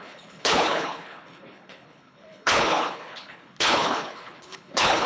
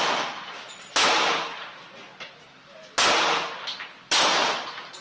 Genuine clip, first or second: second